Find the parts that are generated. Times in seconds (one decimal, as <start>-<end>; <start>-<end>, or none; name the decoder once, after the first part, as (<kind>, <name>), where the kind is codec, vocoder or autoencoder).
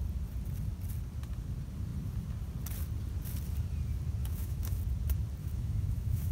4.2-4.8 (autoencoder, DAC-VAE); 5.4-6.3